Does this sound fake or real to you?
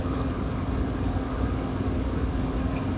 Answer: fake